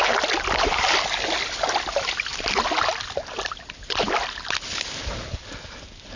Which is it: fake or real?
real